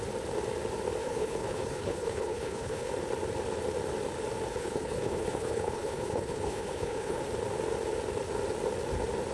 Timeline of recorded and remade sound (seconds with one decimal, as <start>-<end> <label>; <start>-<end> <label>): 0.0-1.0 recorded; 1.0-2.9 remade; 2.9-4.5 recorded; 4.5-7.2 remade; 7.2-9.3 recorded